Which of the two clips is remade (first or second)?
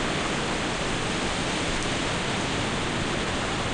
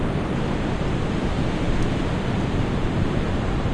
second